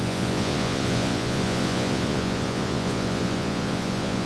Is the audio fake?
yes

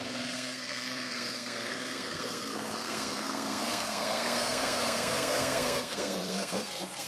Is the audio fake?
yes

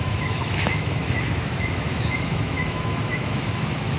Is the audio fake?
yes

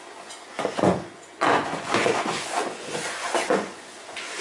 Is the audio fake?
yes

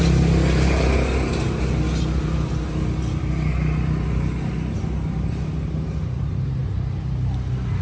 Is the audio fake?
no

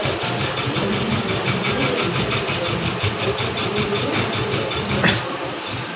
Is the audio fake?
no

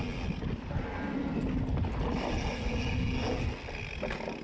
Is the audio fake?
no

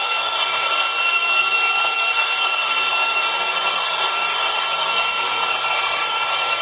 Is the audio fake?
yes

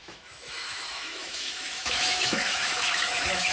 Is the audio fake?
yes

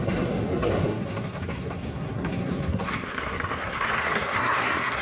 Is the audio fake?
yes